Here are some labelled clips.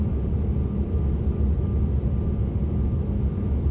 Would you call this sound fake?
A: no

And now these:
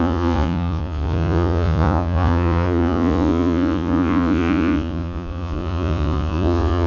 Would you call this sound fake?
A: yes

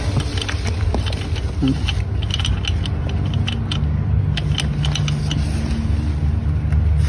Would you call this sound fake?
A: no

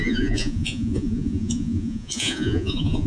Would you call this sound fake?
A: yes